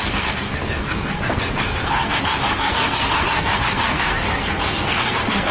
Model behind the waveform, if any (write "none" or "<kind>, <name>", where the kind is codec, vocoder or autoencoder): codec, SNAC